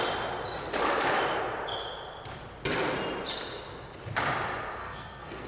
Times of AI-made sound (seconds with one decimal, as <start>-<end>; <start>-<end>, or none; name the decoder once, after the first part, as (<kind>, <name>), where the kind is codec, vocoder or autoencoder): 4.8-5.5 (codec, SNAC)

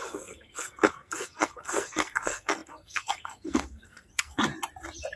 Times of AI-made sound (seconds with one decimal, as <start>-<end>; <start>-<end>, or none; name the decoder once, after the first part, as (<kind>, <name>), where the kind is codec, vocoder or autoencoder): 0.0-4.4 (codec, SNAC)

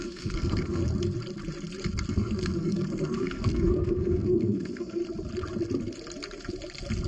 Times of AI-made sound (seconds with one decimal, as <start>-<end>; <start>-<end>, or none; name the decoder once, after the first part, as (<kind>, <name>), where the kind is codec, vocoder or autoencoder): 0.0-0.8 (codec, SNAC); 2.1-5.0

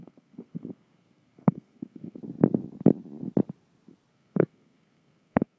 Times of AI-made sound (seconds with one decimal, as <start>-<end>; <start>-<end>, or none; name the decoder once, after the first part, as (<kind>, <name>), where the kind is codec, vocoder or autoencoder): 0.0-2.2 (codec, SNAC); 4.1-5.6